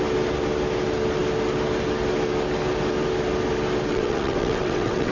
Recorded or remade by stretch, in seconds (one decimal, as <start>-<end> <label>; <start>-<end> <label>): 0.0-3.9 recorded; 3.9-5.1 remade